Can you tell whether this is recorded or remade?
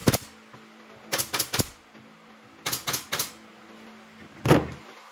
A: recorded